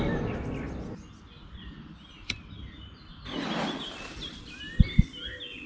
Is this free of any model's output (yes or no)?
yes